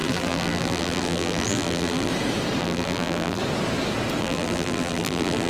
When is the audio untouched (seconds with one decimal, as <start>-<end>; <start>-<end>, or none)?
2.1-2.6; 3.4-4.2